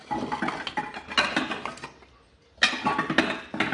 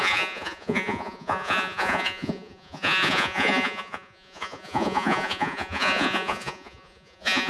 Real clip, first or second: first